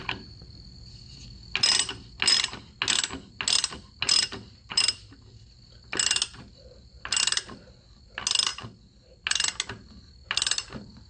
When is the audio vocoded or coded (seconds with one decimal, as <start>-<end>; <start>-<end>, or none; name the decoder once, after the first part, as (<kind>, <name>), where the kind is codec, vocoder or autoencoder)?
none